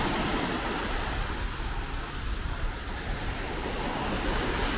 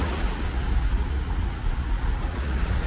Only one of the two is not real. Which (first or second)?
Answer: second